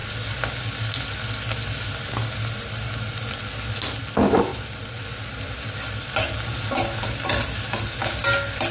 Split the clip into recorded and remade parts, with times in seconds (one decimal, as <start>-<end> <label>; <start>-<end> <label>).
0.0-4.5 recorded; 4.5-6.1 remade; 6.1-8.7 recorded